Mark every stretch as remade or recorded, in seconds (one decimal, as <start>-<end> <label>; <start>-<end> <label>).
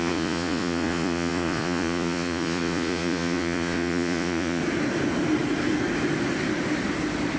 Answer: 0.0-4.6 remade; 4.6-7.4 recorded